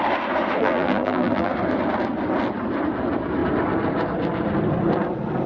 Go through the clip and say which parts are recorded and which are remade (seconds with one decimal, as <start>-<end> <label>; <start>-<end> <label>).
0.0-0.6 recorded; 0.6-1.5 remade; 1.5-5.5 recorded